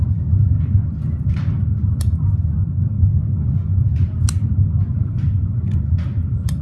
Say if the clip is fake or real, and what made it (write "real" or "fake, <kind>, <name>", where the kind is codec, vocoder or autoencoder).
real